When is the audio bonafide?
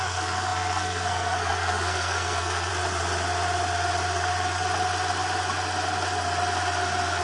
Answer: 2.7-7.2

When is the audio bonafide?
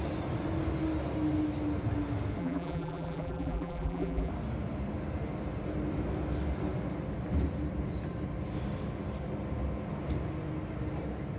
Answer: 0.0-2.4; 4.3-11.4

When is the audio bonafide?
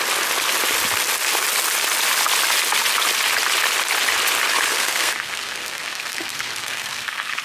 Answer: 0.0-4.7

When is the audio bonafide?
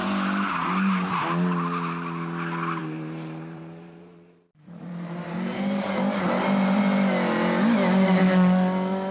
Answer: 0.0-2.8; 6.8-9.1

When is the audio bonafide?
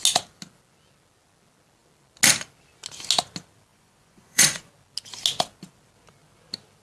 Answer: 0.0-3.7; 4.7-6.8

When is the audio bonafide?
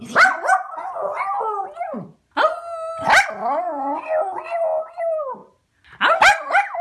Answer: 0.0-6.8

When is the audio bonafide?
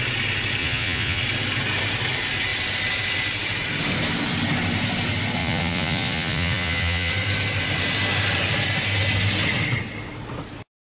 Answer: 0.0-0.6; 1.2-5.4; 7.1-11.0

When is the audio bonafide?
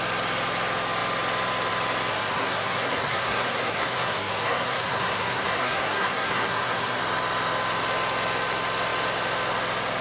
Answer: 0.0-2.1; 7.0-10.0